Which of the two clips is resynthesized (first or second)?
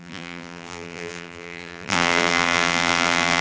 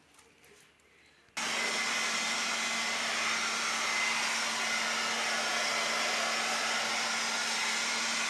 first